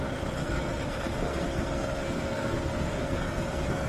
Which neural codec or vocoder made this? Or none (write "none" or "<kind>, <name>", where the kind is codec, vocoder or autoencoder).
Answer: codec, SNAC